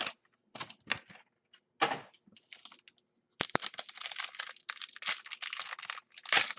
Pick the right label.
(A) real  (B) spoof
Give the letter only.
A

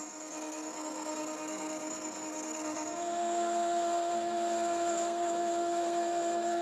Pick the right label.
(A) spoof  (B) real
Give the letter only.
A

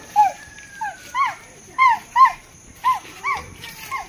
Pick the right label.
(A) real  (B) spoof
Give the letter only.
B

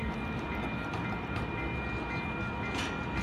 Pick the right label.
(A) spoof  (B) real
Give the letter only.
B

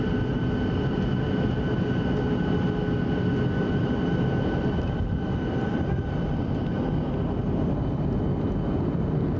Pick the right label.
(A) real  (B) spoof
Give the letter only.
A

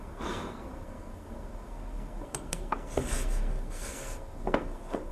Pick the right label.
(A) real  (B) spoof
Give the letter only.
B